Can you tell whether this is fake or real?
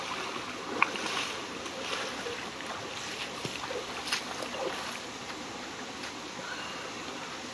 real